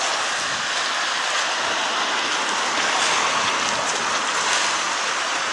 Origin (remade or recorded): recorded